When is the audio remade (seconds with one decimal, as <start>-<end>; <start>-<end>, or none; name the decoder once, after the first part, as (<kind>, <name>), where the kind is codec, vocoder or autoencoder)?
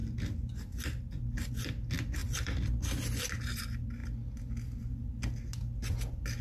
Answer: 2.2-2.7 (vocoder, BigVGAN v2)